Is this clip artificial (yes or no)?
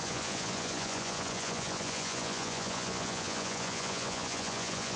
yes